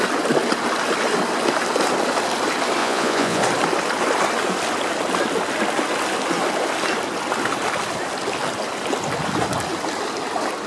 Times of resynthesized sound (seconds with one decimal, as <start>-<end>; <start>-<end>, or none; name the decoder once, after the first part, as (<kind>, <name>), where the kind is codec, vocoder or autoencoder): 2.8-3.4 (vocoder, Vocos)